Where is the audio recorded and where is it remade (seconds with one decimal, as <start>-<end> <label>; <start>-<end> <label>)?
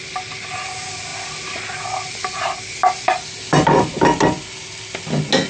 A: 0.0-5.5 recorded